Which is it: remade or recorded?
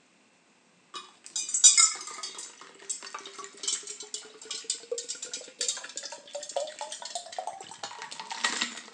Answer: recorded